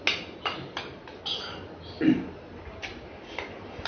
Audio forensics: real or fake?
real